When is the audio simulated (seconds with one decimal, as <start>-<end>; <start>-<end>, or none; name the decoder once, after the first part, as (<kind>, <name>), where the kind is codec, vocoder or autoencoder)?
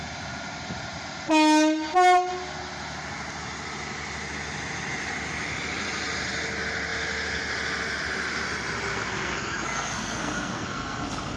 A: 8.9-11.4 (codec, SNAC)